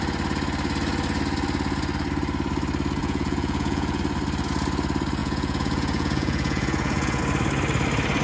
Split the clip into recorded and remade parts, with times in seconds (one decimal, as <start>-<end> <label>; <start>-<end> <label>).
0.0-3.0 recorded; 3.0-4.0 remade; 4.0-5.2 recorded; 5.2-7.2 remade; 7.2-8.2 recorded